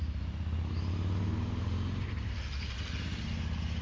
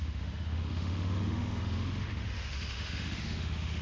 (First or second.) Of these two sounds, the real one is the first